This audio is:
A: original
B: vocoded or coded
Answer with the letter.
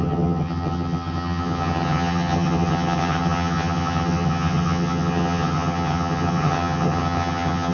B